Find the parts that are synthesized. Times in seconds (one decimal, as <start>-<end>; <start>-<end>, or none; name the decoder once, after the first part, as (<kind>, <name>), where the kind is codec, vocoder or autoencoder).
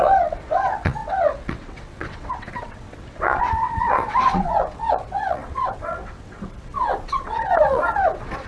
0.0-8.5 (vocoder, WaveNeXt)